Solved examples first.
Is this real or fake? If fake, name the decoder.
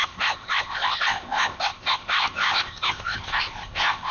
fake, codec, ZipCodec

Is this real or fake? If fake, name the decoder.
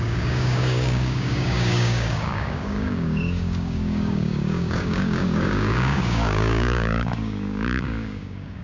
fake, codec, DAC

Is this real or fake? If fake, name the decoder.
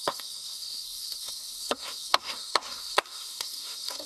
fake, codec, SNAC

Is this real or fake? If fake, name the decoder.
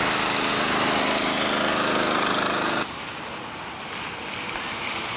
real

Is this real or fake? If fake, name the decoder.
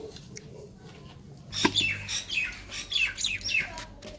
real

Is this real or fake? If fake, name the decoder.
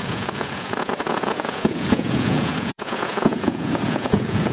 fake, vocoder, Vocos